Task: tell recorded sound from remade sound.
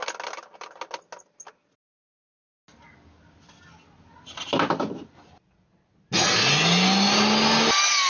recorded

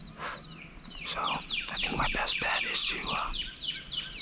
recorded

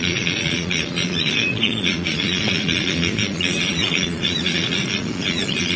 remade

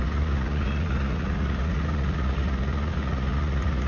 remade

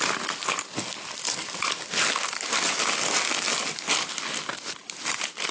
recorded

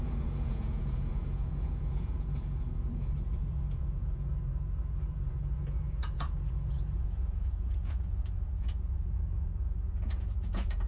remade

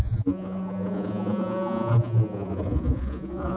remade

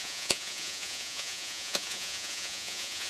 remade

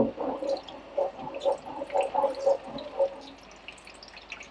recorded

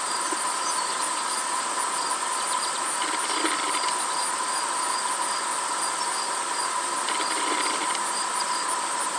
recorded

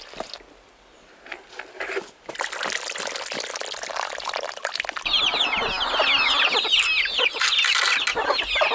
recorded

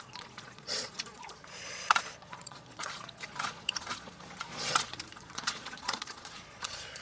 remade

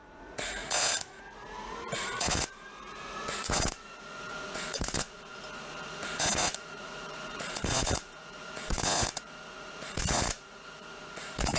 remade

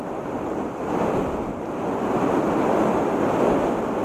recorded